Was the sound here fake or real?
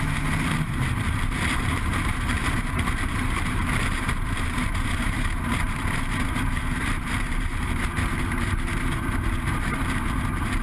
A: fake